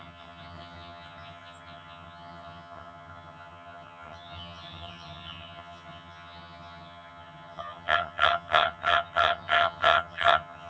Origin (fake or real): fake